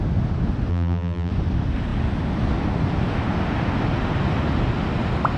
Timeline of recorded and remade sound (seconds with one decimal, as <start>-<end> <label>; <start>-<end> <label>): 0.0-0.7 recorded; 0.7-1.3 remade; 1.3-5.4 recorded